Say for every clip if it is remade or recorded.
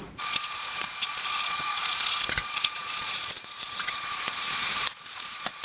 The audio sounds remade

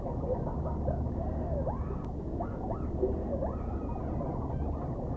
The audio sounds recorded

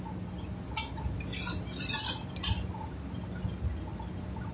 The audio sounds recorded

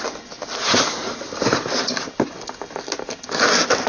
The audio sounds recorded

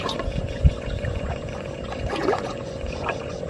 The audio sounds remade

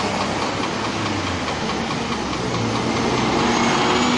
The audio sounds recorded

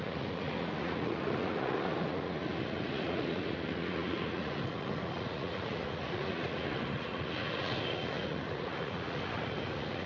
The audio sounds remade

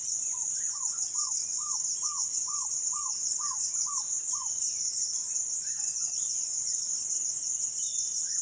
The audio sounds remade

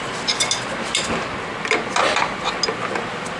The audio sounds recorded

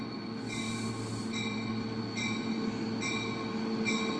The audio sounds recorded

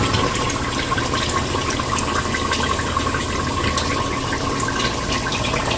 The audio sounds recorded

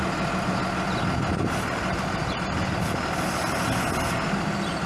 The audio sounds recorded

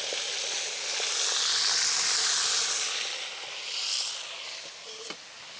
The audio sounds recorded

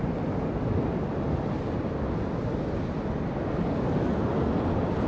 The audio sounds recorded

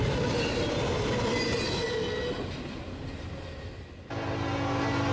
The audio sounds recorded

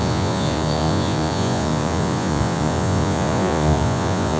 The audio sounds remade